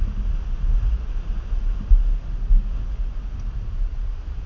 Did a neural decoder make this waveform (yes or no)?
no